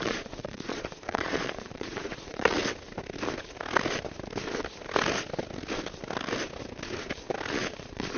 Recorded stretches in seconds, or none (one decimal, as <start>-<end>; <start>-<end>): 2.6-7.5